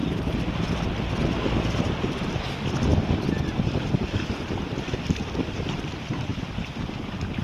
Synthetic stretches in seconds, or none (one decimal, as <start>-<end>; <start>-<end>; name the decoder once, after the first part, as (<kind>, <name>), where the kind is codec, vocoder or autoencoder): 2.3-2.9 (vocoder, BigVGAN v2); 3.6-7.4